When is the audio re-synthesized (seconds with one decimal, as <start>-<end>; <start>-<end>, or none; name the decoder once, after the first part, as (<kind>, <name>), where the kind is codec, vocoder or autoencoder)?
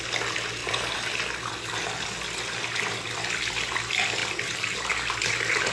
none